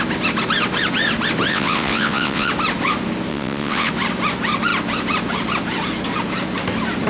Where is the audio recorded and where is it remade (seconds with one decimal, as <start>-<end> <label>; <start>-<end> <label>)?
0.0-1.5 recorded; 1.5-2.5 remade; 2.5-3.3 recorded; 3.3-3.9 remade; 3.9-7.1 recorded